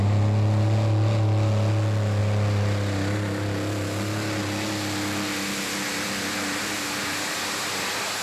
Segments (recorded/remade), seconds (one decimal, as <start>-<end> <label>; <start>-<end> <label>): 0.0-8.2 recorded